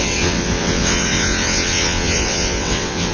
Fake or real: fake